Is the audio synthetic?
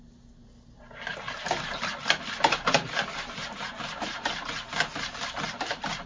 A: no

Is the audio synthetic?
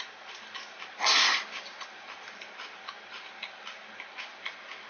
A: no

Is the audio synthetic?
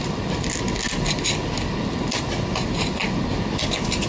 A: no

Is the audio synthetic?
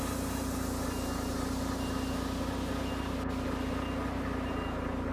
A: no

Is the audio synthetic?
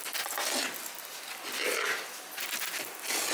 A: no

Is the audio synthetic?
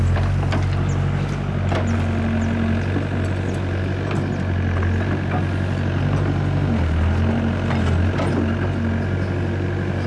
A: no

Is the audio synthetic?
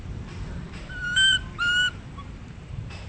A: yes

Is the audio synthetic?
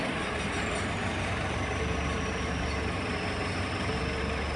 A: yes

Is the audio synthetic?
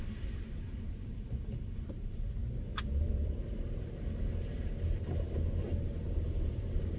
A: yes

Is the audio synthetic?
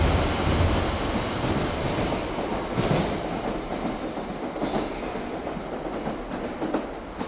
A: no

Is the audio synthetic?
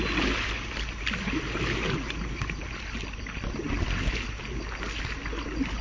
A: no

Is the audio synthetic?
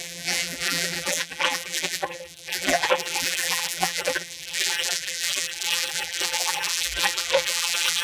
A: yes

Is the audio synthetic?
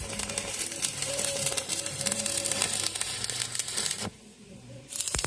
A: yes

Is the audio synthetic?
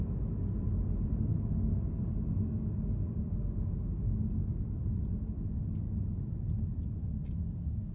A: no